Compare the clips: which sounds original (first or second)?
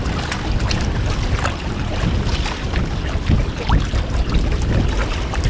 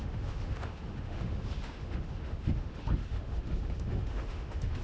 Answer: first